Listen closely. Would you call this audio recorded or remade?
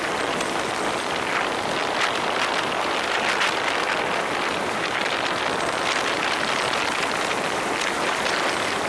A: recorded